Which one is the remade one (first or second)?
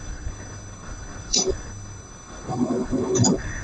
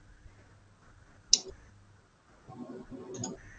first